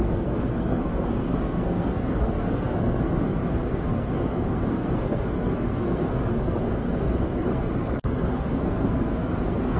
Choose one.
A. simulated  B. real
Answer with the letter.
A